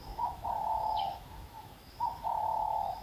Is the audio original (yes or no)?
no